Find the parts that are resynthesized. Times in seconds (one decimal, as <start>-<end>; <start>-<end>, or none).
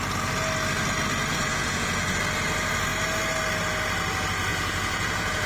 1.3-2.2; 4.5-5.5